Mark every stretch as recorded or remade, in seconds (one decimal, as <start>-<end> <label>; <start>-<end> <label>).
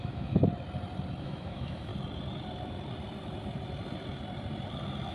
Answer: 0.0-0.4 remade; 0.4-1.2 recorded; 1.2-1.9 remade; 1.9-5.1 recorded